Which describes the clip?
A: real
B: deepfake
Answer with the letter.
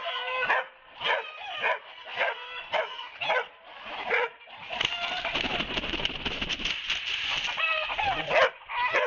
A